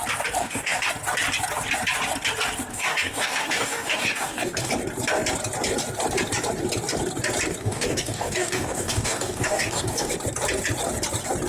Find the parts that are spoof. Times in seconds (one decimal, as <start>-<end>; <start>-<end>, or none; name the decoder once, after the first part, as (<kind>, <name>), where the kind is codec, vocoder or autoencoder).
0.4-0.9 (codec, DAC); 2.7-4.7; 7.6-10.1